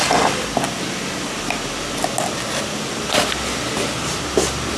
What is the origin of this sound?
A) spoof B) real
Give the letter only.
B